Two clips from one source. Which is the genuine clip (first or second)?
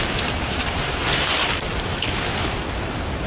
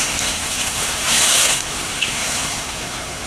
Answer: first